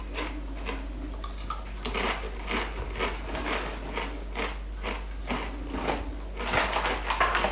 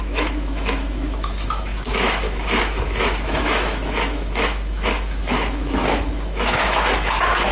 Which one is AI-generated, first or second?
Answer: second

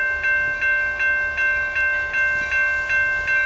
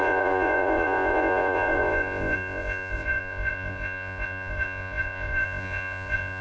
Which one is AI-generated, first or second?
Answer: second